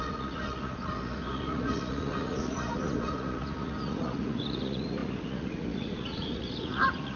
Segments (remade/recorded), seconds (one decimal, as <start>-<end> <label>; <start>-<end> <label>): 0.0-7.2 remade